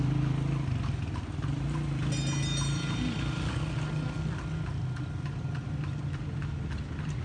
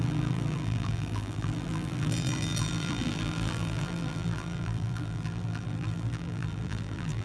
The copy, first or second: second